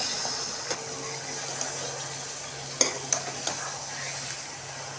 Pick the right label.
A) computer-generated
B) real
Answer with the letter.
B